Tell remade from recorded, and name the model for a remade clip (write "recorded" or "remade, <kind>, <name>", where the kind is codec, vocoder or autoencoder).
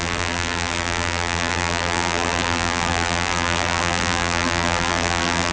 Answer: remade, vocoder, BigVGAN v2